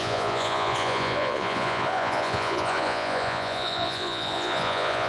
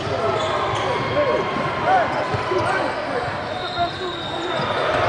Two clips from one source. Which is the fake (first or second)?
first